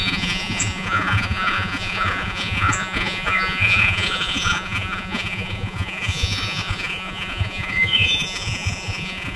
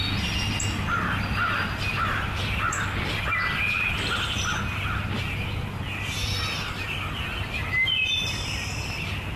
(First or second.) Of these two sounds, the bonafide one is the second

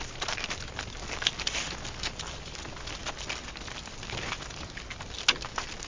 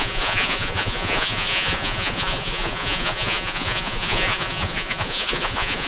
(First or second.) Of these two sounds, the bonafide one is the first